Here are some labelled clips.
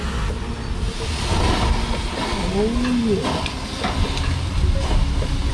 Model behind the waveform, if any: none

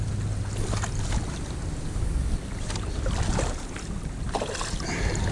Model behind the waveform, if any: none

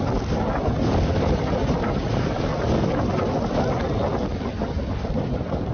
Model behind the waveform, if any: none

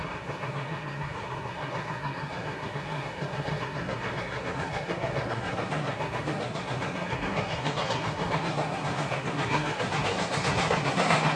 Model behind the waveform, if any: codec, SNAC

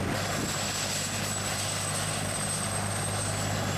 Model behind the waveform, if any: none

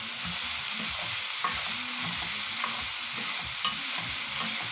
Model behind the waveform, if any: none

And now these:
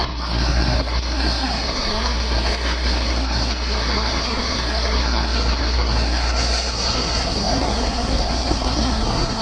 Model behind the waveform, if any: codec, SNAC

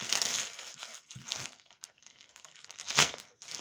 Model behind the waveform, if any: codec, SNAC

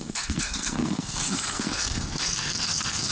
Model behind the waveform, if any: codec, SNAC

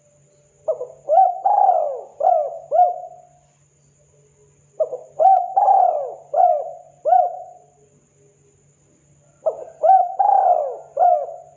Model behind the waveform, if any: none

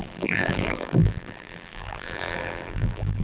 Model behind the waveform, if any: vocoder, BigVGAN v2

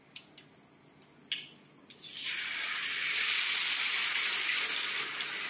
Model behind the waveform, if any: none